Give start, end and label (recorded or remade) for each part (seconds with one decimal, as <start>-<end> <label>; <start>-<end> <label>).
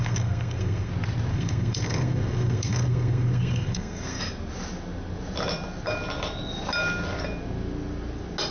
0.0-0.9 remade; 0.9-1.3 recorded; 1.3-4.2 remade; 4.2-8.5 recorded